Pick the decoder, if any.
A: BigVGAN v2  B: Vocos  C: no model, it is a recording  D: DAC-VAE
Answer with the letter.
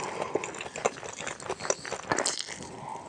C